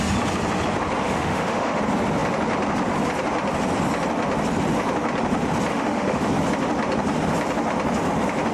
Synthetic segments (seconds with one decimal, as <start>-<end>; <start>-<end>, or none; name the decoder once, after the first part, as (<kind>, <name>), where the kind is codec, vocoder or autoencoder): 1.0-1.8 (autoencoder, DAC-VAE); 5.7-6.3